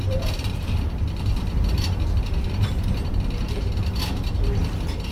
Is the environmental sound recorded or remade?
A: remade